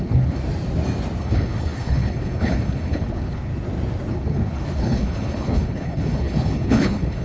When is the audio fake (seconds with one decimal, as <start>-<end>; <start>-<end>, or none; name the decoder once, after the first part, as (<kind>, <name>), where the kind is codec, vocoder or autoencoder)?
0.0-0.4 (codec, HILCodec); 1.2-3.5; 4.1-7.2